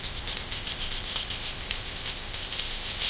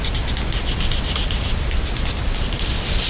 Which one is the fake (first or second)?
first